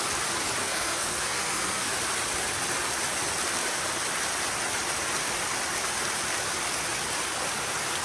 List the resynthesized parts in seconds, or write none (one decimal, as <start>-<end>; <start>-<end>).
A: 0.6-1.9